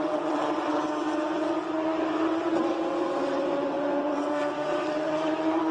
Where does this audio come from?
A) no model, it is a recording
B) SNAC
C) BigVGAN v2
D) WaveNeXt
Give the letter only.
D